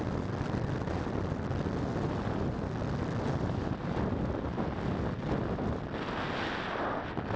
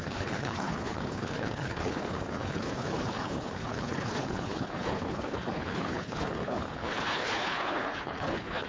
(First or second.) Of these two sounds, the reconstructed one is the second